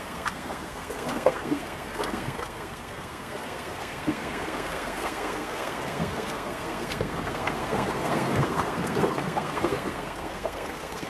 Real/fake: fake